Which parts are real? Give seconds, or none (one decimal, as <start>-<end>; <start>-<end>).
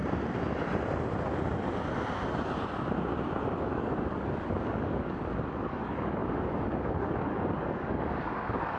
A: 0.0-3.6